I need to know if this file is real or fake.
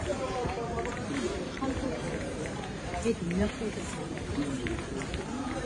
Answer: fake